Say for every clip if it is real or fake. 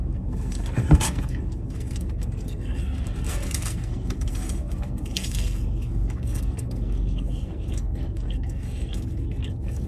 fake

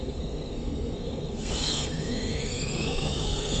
fake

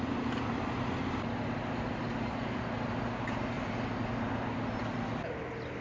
real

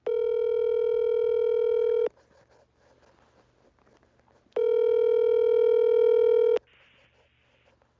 real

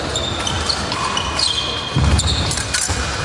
real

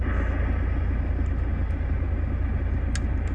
real